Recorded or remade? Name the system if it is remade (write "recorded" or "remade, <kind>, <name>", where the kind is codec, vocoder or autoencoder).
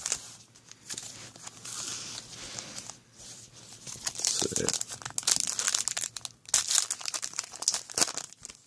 recorded